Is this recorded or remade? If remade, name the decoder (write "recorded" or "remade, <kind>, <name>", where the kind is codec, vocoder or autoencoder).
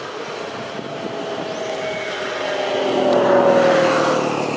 recorded